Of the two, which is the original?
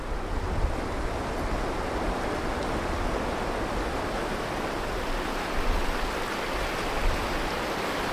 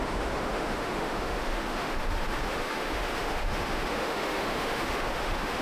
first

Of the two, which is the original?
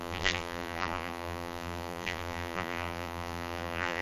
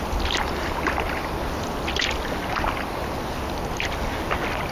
second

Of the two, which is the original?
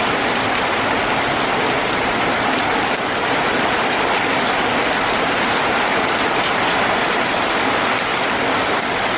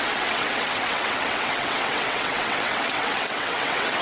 first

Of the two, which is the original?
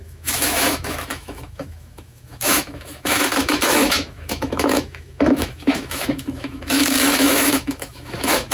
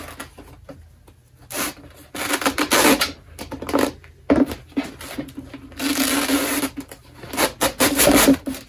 second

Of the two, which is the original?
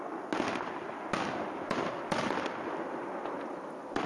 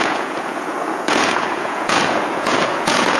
first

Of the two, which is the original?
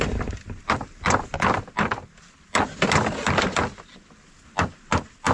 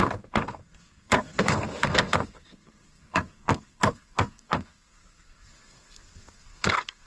first